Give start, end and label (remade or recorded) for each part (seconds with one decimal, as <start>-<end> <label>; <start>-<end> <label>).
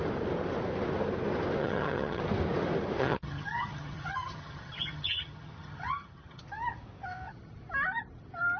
0.0-1.6 recorded; 1.6-2.2 remade; 2.2-3.0 recorded; 3.0-6.4 remade; 6.4-8.6 recorded